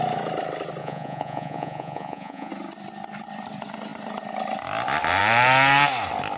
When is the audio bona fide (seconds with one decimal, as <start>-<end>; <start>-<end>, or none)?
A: 0.0-0.8; 2.5-6.4